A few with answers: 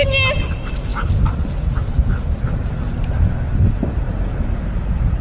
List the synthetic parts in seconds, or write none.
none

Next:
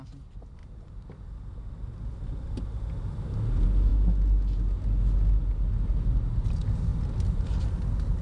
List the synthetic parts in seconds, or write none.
0.6-2.5

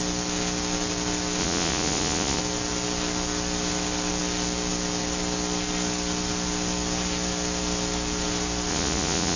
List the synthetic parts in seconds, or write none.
1.4-2.4; 8.7-9.4

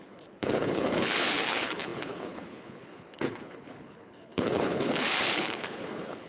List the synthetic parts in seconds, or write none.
0.0-6.3